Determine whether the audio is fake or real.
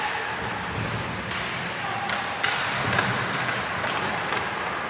real